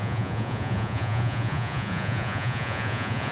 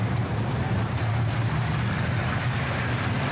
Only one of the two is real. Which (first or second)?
second